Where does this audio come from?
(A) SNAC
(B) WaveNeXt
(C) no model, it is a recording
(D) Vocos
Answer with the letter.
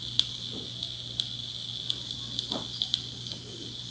C